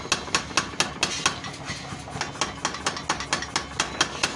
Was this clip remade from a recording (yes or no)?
no